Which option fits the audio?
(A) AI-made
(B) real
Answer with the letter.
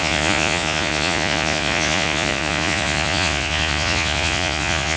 A